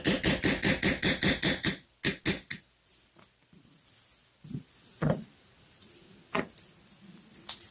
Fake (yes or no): no